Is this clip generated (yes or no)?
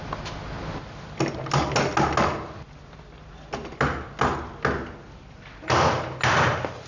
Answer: no